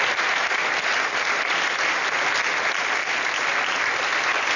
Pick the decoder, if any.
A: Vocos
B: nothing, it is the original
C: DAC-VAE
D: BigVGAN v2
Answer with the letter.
B